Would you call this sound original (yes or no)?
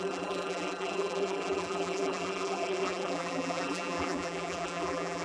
no